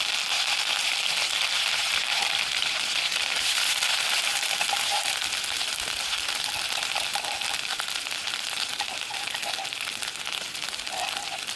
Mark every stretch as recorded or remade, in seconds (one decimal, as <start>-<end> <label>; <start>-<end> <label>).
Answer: 0.0-1.8 recorded; 1.8-7.0 remade; 7.0-11.6 recorded